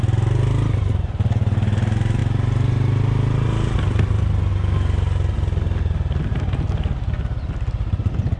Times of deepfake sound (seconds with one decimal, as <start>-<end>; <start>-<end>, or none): none